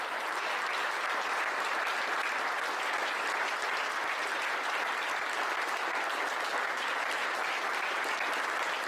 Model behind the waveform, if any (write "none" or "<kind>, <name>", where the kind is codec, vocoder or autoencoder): none